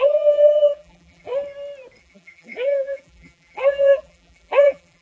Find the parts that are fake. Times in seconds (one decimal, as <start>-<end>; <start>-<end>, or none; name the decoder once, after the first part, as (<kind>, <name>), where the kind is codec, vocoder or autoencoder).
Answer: 0.0-1.3 (vocoder, BigVGAN v2); 2.0-5.0